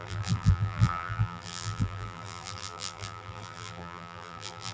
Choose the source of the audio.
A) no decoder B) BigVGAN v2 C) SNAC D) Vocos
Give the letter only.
B